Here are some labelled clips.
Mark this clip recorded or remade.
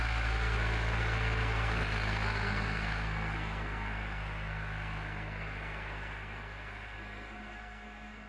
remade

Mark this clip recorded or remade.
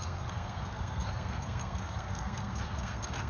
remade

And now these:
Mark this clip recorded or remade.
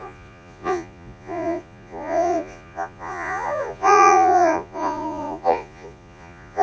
remade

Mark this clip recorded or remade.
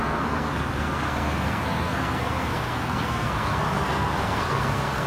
remade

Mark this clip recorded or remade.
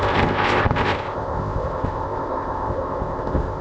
remade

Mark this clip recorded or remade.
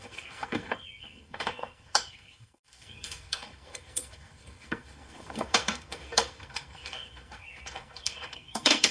remade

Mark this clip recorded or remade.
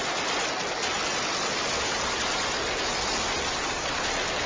recorded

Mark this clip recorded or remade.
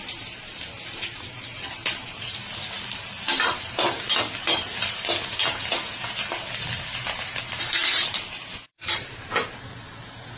remade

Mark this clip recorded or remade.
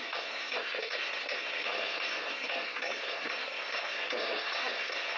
remade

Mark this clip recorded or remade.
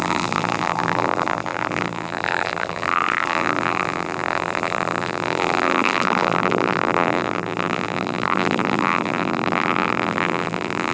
remade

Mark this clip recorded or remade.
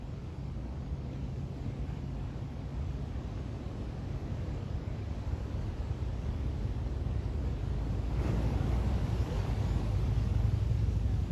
remade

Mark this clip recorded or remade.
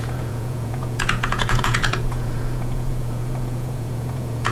remade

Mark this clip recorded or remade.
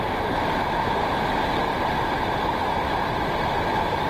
recorded